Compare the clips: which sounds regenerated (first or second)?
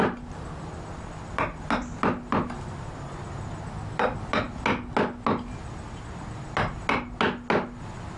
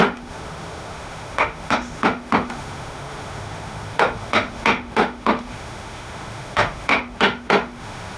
second